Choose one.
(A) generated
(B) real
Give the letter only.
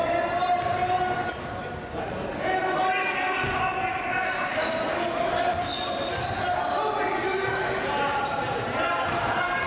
B